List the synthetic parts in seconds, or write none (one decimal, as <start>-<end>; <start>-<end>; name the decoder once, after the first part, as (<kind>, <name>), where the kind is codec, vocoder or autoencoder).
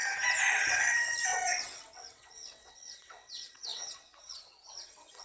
0.5-5.2 (vocoder, WaveNeXt)